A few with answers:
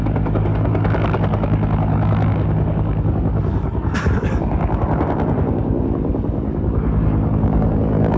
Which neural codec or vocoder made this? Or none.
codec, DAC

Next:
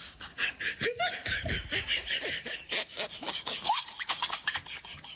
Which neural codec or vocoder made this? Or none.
codec, DAC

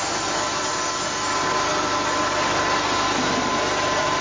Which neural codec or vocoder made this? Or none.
none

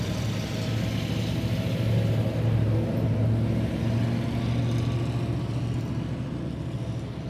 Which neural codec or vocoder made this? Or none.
none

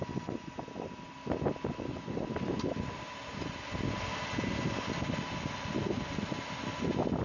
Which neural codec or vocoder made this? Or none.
none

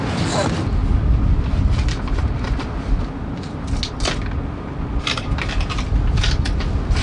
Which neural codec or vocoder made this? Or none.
none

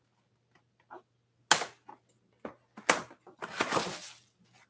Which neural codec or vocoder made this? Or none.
none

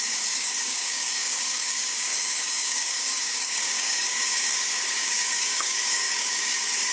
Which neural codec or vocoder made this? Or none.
codec, DAC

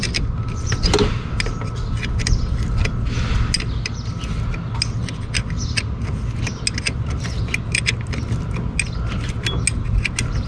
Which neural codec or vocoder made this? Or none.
none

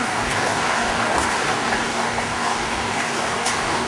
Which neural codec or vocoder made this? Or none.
codec, DAC